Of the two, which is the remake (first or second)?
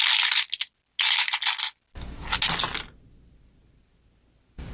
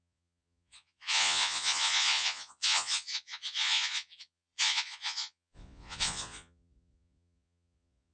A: second